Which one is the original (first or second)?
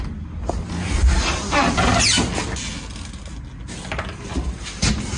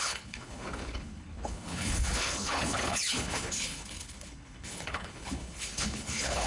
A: first